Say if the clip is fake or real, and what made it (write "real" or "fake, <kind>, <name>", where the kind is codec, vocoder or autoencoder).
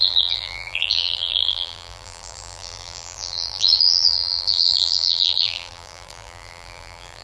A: fake, vocoder, BigVGAN v2